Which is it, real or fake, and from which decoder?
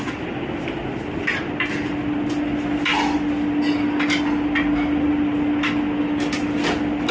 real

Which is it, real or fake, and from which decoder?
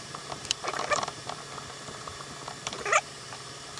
fake, vocoder, BigVGAN v2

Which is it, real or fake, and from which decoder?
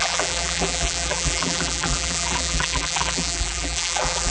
fake, vocoder, BigVGAN v2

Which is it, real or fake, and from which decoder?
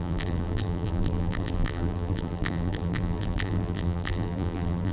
fake, vocoder, BigVGAN v2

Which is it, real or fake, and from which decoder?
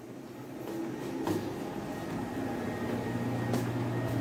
real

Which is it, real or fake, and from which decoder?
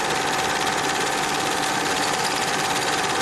fake, vocoder, BigVGAN v2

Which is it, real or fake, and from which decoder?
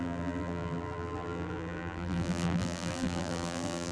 fake, vocoder, BigVGAN v2